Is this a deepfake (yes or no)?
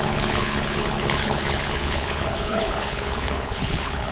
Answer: yes